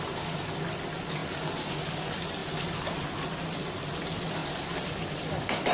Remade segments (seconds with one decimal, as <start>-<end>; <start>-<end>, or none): none